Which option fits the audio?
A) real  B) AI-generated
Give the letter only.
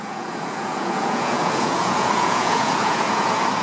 B